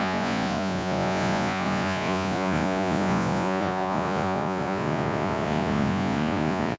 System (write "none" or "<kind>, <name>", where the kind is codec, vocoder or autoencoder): vocoder, Vocos